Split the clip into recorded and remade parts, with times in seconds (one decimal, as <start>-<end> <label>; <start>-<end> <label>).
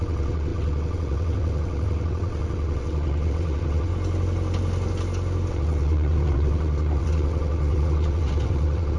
0.0-3.9 remade; 3.9-5.5 recorded; 5.5-9.0 remade